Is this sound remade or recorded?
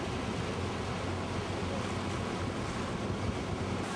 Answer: recorded